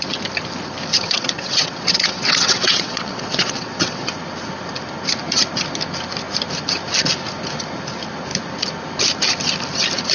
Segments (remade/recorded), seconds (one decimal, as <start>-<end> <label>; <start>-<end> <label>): 0.0-0.9 recorded; 0.9-4.1 remade; 4.1-10.1 recorded